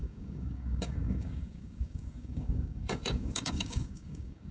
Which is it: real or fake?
fake